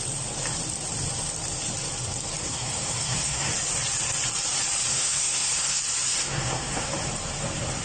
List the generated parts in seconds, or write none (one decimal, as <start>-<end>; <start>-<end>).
2.4-3.5; 4.9-5.8; 6.2-6.9